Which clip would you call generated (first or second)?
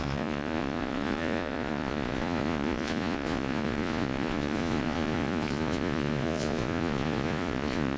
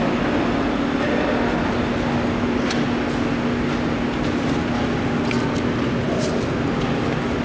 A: first